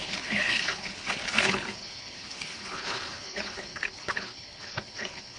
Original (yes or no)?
no